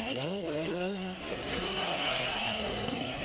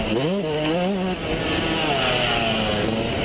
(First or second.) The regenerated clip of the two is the first